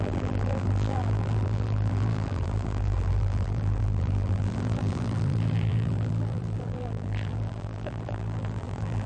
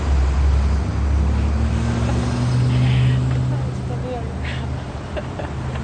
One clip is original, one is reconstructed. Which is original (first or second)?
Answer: second